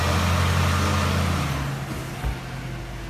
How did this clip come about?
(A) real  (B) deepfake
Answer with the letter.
A